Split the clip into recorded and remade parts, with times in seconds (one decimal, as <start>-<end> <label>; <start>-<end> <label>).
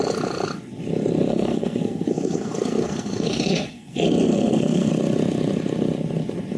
0.0-1.3 recorded; 1.3-4.9 remade; 4.9-6.6 recorded